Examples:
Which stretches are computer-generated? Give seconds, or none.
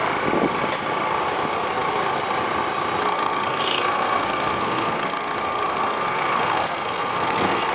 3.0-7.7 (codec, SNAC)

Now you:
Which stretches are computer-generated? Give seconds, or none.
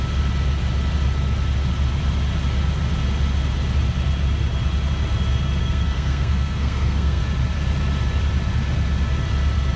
5.6-7.2 (codec, SNAC)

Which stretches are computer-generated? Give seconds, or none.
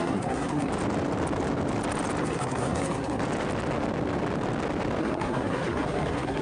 0.0-0.7 (codec, SNAC); 2.2-3.2; 5.0-6.4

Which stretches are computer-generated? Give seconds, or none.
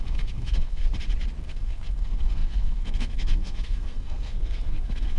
0.0-0.8 (codec, SNAC); 1.4-5.2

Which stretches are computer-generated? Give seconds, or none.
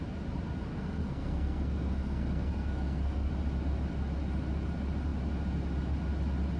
0.7-3.3 (codec, SNAC)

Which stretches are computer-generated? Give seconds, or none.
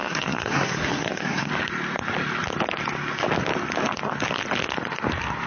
0.0-1.5 (codec, SNAC)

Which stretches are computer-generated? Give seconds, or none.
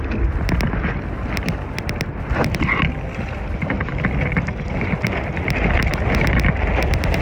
none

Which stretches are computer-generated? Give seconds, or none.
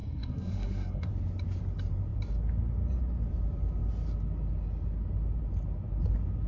0.0-1.1 (codec, SNAC)